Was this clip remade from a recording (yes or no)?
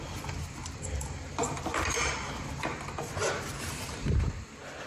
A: no